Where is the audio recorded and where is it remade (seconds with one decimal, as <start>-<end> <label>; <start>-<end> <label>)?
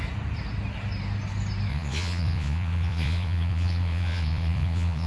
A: 0.0-1.7 recorded; 1.7-5.1 remade